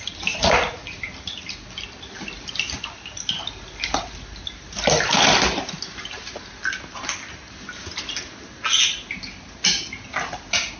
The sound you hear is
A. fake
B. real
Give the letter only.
B